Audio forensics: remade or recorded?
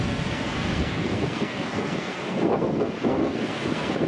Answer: remade